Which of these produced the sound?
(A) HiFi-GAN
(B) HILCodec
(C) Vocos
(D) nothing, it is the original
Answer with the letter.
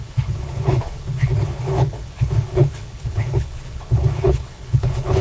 B